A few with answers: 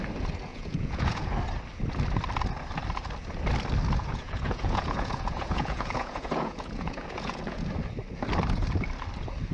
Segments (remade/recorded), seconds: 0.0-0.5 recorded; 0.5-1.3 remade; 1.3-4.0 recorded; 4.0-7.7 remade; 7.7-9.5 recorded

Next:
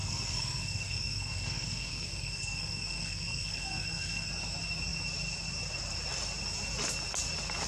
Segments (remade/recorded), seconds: 0.0-4.3 remade; 4.3-7.7 recorded

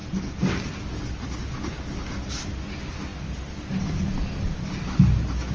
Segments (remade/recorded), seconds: 0.0-5.5 recorded

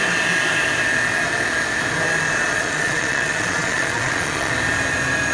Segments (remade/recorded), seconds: 0.0-2.5 recorded; 2.5-4.5 remade; 4.5-5.3 recorded

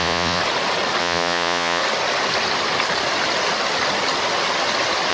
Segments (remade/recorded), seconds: 0.0-0.4 remade; 0.4-1.0 recorded; 1.0-1.8 remade; 1.8-5.1 recorded

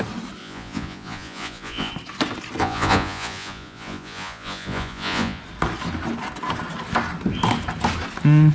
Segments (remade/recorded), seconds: 0.0-0.4 recorded; 0.4-1.9 remade; 1.9-2.6 recorded; 2.6-5.4 remade; 5.4-8.5 recorded

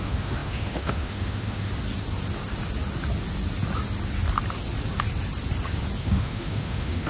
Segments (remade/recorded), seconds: 0.0-1.7 remade; 1.7-6.0 recorded; 6.0-7.1 remade

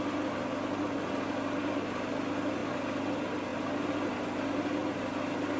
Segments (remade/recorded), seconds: 0.0-5.6 recorded